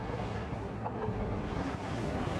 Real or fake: fake